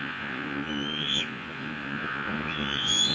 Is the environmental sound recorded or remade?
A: remade